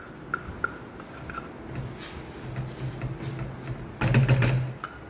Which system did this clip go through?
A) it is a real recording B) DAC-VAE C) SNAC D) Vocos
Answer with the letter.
A